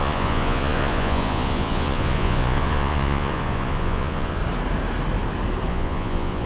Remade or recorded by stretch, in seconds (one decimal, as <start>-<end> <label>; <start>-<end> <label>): 0.0-4.4 remade; 4.4-5.7 recorded; 5.7-6.5 remade